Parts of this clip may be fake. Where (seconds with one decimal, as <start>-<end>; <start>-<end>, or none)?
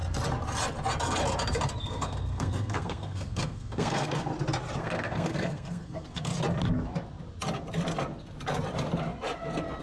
1.8-4.3; 4.8-6.3